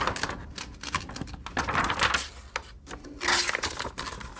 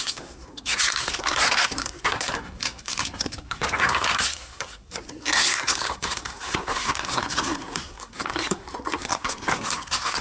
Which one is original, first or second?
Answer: first